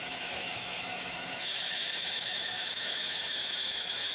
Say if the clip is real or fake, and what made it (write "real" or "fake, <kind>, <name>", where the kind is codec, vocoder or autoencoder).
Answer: fake, autoencoder, DAC-VAE